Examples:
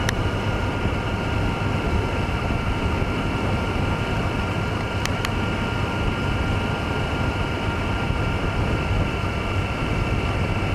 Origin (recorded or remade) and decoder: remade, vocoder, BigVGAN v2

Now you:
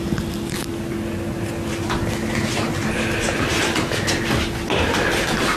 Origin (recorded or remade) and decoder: recorded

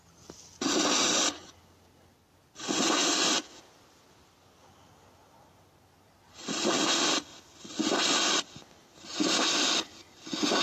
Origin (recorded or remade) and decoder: recorded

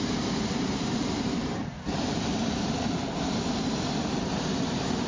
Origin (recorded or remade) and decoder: remade, vocoder, BigVGAN v2